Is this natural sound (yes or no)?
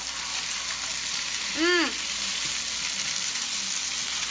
yes